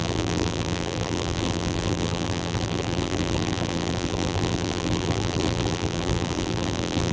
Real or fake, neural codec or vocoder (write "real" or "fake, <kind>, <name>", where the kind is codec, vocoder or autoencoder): fake, vocoder, BigVGAN v2